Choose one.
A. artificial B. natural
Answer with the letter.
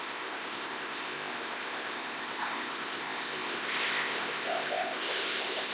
A